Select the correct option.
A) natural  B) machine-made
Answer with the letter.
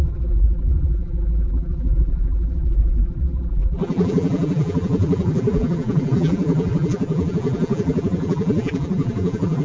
B